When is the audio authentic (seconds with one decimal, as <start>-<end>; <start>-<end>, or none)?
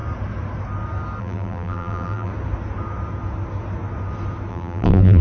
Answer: 0.0-1.2; 2.3-4.5